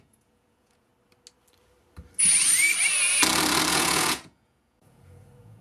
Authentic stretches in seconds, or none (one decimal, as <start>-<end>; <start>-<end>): 0.9-3.7